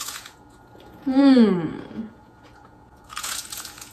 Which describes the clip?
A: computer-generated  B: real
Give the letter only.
A